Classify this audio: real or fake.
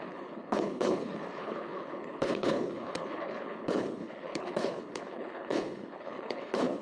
fake